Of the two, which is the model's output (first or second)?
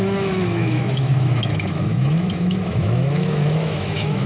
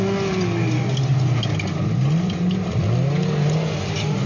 first